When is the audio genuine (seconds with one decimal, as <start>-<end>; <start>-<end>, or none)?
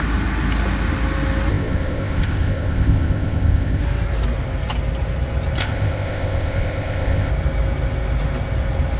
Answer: 0.0-1.5; 3.8-5.6; 7.3-9.0